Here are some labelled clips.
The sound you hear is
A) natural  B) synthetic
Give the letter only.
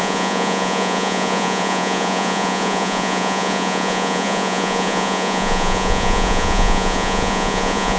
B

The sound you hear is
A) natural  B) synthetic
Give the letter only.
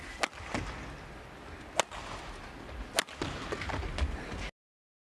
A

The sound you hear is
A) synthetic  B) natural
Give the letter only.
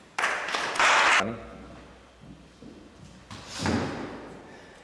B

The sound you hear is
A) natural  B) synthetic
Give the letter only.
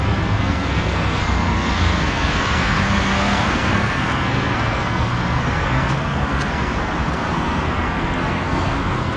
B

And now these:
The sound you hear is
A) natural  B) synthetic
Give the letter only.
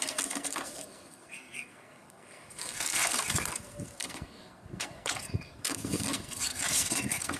B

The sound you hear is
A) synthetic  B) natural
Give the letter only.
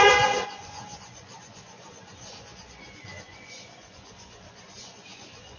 A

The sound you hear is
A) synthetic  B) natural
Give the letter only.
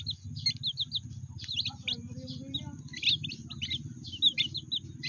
B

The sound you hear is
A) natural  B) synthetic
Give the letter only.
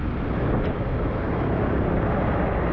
A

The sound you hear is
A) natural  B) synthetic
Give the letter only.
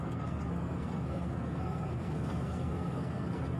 B